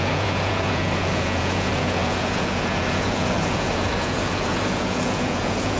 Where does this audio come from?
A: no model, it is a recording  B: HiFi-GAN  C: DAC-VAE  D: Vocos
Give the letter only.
D